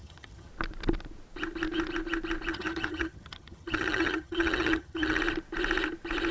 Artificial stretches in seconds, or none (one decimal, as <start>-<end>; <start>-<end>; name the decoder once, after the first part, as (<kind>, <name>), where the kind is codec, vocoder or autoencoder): 0.0-0.5 (vocoder, HiFi-GAN); 2.5-5.2